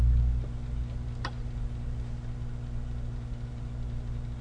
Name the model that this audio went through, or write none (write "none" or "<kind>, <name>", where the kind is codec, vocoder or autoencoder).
none